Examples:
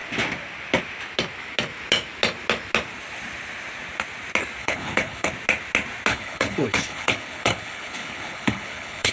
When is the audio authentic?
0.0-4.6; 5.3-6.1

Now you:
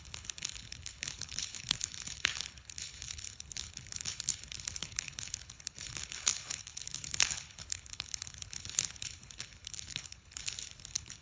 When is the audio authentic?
none

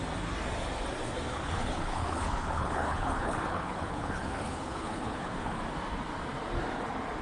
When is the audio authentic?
0.0-1.3; 5.6-7.2

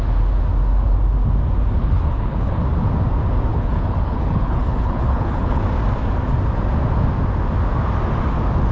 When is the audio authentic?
0.0-1.8; 2.6-3.5; 5.6-8.7

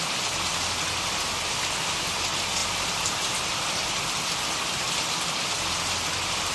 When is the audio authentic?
0.0-6.5